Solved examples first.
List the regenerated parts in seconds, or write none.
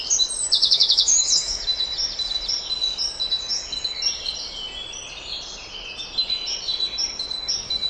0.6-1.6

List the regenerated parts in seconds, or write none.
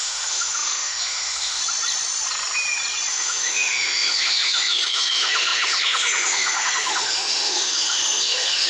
0.0-1.6; 3.1-8.7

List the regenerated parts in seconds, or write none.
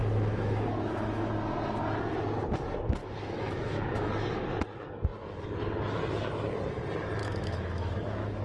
0.0-1.3; 3.0-4.1; 7.2-8.4